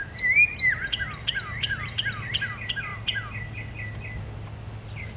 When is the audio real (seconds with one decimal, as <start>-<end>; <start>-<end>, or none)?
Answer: 0.0-5.2